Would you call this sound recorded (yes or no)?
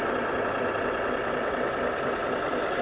yes